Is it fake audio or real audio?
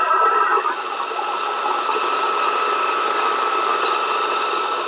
real